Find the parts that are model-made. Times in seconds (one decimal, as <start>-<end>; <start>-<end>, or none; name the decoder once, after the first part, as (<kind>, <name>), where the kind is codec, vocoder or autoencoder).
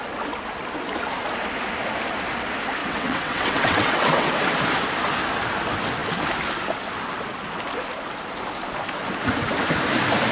2.8-4.3 (vocoder, WaveNeXt)